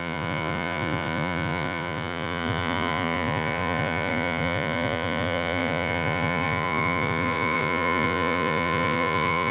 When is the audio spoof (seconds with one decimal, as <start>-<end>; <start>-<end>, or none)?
0.0-9.5